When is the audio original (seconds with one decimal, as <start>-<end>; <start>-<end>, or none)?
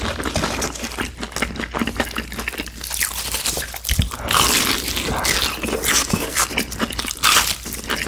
0.0-5.9; 6.5-8.1